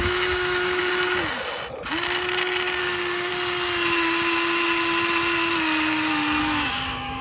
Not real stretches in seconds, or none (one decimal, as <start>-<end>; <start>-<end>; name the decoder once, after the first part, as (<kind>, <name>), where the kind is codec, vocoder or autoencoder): 0.0-0.8 (codec, DAC); 2.8-3.3; 6.4-7.2